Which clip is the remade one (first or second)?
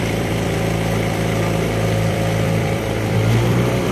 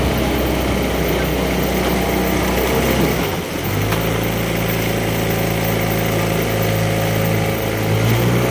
first